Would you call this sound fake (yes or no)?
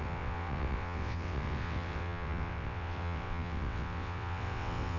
yes